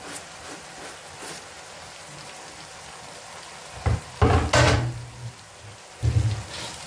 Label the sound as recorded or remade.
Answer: recorded